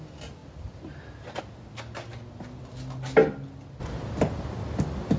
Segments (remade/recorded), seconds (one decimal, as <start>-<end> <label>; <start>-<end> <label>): 0.0-0.4 recorded; 0.4-1.4 remade; 1.4-5.2 recorded